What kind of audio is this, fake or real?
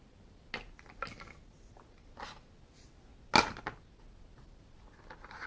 real